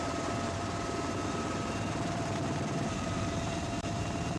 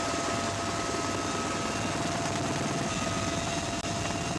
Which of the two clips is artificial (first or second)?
first